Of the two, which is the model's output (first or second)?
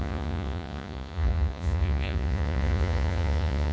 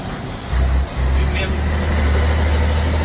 first